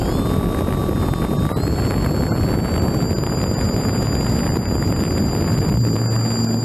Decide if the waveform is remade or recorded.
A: recorded